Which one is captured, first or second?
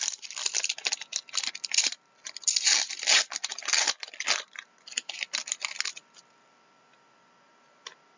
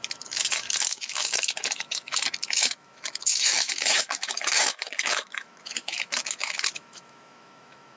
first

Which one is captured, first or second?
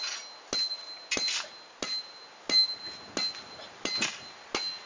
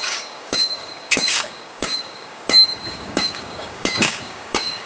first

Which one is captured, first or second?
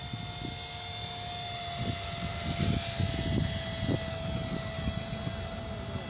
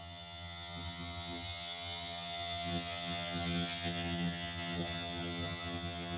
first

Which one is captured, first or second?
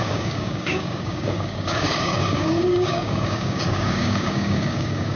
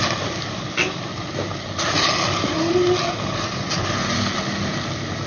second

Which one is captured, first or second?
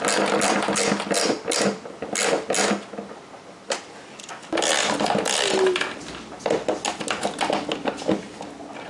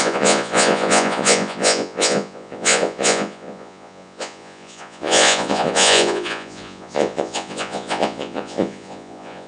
first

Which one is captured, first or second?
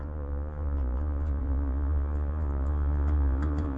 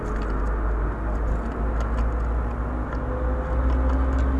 second